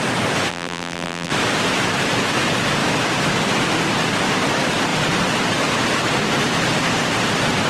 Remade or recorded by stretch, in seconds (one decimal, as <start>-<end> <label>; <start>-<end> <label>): 0.0-0.5 recorded; 0.5-1.3 remade; 1.3-7.7 recorded